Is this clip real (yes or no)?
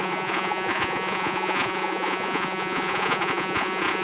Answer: no